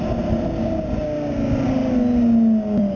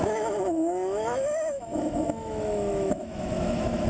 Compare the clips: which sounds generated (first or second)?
second